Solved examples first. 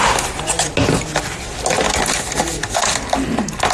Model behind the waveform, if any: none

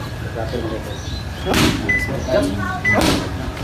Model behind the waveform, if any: none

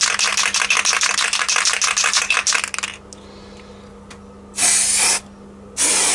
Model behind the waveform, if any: none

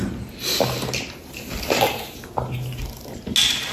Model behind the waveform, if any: none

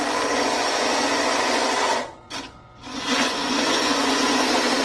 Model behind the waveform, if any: vocoder, Vocos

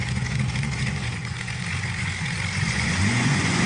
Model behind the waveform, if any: vocoder, Vocos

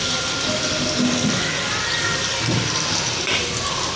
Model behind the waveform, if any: none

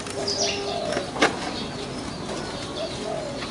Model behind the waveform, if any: none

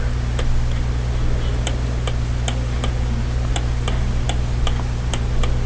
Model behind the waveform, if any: none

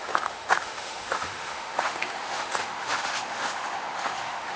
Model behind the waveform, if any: autoencoder, DAC-VAE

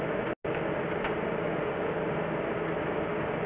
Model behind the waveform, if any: none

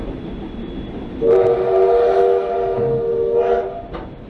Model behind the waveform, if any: none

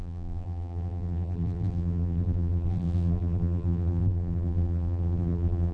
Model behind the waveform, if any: vocoder, BigVGAN v2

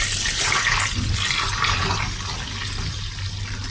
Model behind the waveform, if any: none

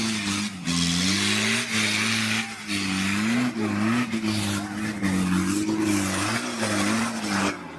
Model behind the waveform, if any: none